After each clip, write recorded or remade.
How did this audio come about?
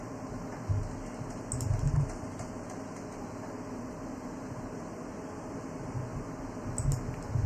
recorded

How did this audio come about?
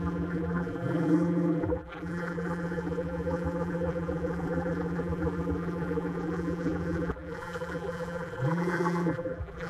remade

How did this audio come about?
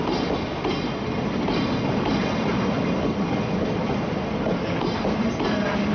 recorded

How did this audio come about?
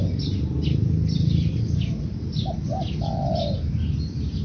recorded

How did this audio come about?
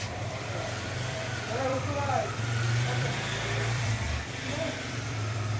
remade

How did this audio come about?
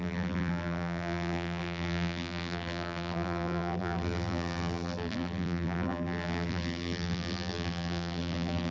remade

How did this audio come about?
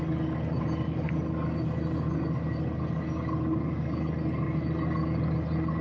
recorded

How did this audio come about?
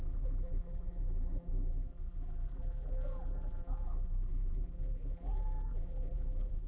remade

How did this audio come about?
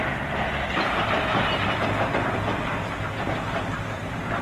remade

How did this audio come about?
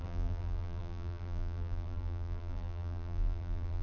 remade